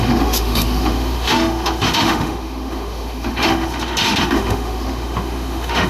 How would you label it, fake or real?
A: fake